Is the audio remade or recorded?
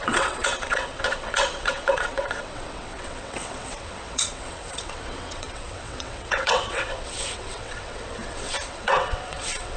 remade